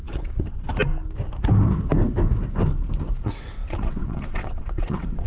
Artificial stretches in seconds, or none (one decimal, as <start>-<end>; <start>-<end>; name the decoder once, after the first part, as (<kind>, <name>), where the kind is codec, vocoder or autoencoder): 0.0-0.7 (vocoder, WaveNeXt); 3.2-5.3